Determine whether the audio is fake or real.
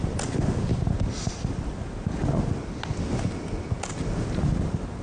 real